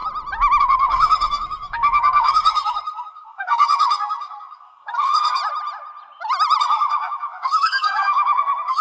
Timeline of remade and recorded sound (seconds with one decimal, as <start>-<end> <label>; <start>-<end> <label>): 0.0-0.6 recorded; 0.6-5.4 remade; 5.4-6.6 recorded; 6.6-8.8 remade